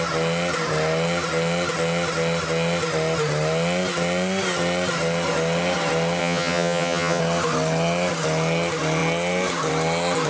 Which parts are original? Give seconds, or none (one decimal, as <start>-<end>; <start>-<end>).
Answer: 0.0-6.2; 7.2-10.3